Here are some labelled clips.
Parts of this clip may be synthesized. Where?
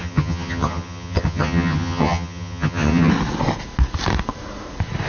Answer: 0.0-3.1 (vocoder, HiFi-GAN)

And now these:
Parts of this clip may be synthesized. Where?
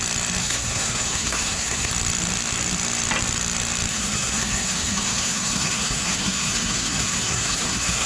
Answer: 0.4-1.9 (codec, SNAC); 3.9-8.1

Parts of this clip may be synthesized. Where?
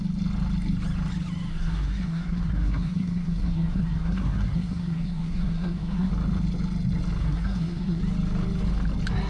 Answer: 1.5-6.1 (codec, SNAC); 7.2-8.0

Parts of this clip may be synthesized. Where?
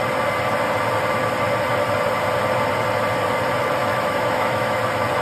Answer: 3.8-4.8 (autoencoder, DAC-VAE)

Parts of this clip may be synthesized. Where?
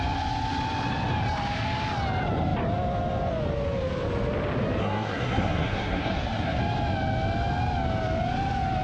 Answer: 4.8-6.6 (codec, SNAC)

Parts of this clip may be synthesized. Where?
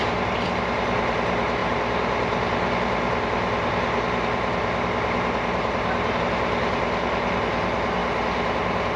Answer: none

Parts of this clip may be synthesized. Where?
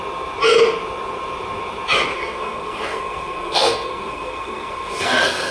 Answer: 2.1-5.5 (codec, SNAC)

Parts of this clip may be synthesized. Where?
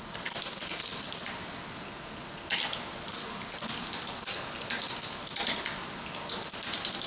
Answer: none